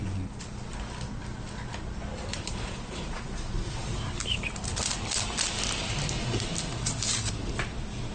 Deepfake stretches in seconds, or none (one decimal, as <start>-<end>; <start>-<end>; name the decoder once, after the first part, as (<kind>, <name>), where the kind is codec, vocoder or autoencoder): 2.3-4.0 (vocoder, Vocos)